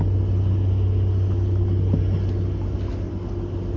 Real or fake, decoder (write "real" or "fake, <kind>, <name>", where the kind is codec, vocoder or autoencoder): real